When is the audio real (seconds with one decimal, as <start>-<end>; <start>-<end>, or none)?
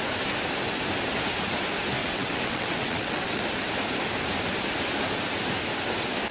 0.0-2.0; 3.4-6.3